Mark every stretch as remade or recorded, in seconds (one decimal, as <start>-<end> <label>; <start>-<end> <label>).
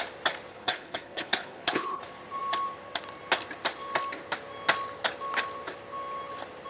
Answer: 0.0-0.5 recorded; 0.5-2.0 remade; 2.0-6.7 recorded